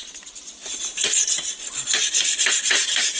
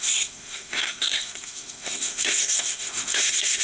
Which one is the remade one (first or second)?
second